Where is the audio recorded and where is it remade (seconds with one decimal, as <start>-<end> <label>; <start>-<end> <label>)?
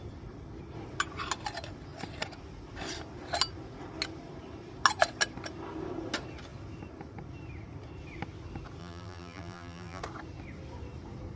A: 0.0-8.8 recorded; 8.8-10.0 remade; 10.0-11.4 recorded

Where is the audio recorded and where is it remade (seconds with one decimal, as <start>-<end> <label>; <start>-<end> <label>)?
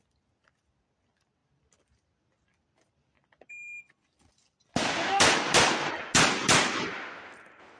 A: 0.0-1.4 recorded; 1.4-5.9 remade; 5.9-7.8 recorded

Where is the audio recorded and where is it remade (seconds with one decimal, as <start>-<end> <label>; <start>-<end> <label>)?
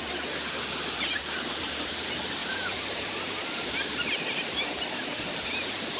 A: 0.0-2.4 recorded; 2.4-4.8 remade; 4.8-6.0 recorded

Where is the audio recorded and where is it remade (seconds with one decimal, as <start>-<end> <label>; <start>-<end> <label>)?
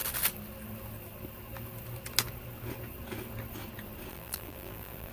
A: 0.0-4.1 recorded; 4.1-5.1 remade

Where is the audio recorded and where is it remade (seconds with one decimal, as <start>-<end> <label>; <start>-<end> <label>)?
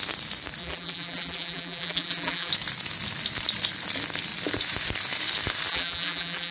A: 0.0-0.6 recorded; 0.6-2.5 remade; 2.5-5.7 recorded; 5.7-6.5 remade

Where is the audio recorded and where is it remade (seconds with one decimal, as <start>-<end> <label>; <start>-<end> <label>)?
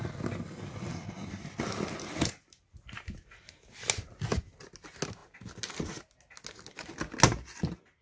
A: 0.0-8.0 recorded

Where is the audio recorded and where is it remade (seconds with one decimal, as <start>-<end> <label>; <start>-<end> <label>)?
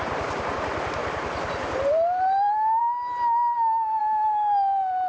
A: 0.0-1.0 recorded; 1.0-2.8 remade; 2.8-4.0 recorded; 4.0-5.1 remade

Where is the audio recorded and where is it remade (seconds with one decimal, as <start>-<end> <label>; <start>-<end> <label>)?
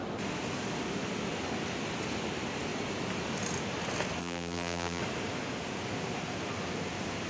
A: 0.0-4.2 recorded; 4.2-5.0 remade; 5.0-7.3 recorded